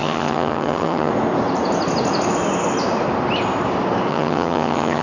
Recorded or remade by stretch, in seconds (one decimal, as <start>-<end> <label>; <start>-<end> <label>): 0.0-1.1 remade; 1.1-4.1 recorded; 4.1-5.0 remade